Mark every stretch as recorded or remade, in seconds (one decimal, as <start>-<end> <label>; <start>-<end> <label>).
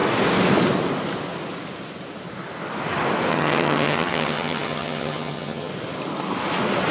0.0-3.3 recorded; 3.3-5.7 remade; 5.7-6.9 recorded